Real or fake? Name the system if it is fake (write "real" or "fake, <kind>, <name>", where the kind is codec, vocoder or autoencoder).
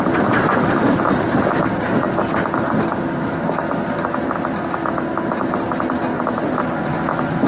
real